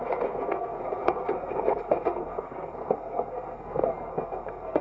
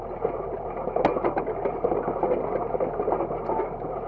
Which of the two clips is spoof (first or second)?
first